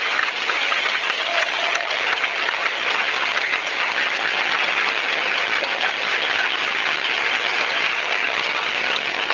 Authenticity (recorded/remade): remade